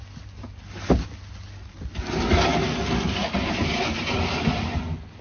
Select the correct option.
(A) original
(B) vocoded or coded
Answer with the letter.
A